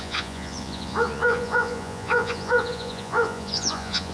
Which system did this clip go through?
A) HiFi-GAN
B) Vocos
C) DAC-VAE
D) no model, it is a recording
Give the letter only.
B